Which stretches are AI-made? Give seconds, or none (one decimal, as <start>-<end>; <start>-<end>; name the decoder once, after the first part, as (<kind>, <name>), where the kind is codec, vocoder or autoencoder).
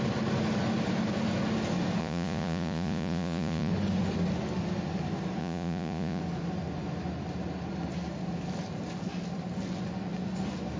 2.0-3.7 (vocoder, Vocos); 5.4-6.2